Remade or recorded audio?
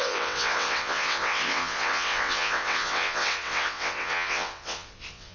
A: remade